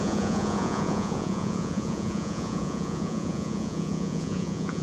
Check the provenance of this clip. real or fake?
fake